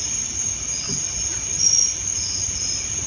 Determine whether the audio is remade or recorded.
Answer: recorded